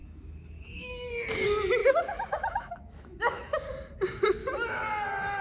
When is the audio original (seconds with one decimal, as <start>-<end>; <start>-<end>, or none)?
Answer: 0.9-1.8; 3.7-4.4